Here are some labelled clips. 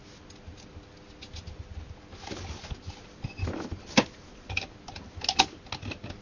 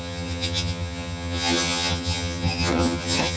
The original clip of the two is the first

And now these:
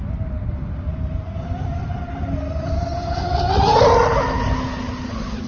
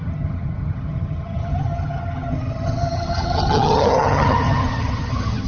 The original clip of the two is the first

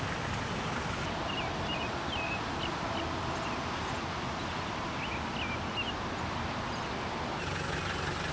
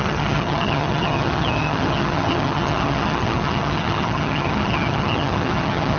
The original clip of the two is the first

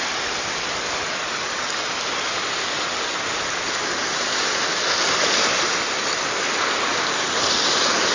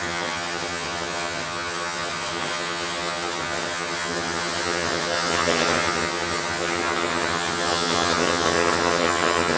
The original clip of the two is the first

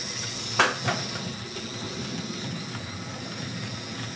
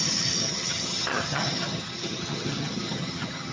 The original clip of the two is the first